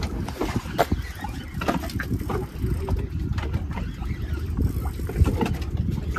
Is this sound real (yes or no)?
yes